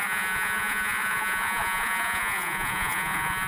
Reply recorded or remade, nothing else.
remade